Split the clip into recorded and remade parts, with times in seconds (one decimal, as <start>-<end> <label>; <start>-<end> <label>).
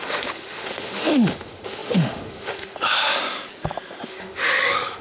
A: 0.0-3.1 remade; 3.1-4.1 recorded; 4.1-5.0 remade